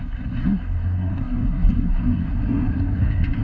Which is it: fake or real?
fake